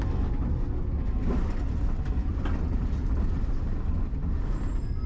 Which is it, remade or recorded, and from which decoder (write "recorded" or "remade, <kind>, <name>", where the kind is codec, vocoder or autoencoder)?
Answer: recorded